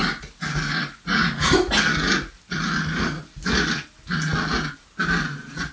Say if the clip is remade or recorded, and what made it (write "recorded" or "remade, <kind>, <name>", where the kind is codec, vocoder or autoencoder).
recorded